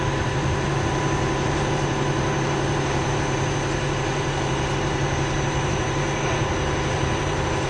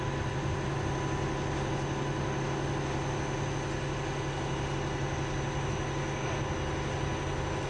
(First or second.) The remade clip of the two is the first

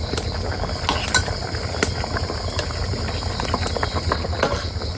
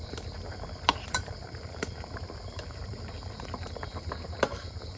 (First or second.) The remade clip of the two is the second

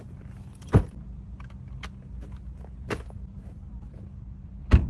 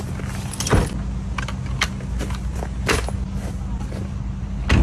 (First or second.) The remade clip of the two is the first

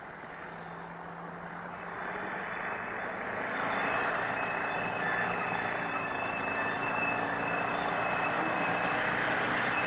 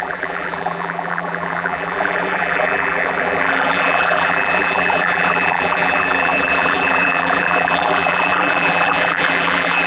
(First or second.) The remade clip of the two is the second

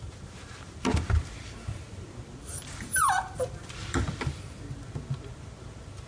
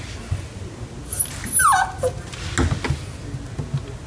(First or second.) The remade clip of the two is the first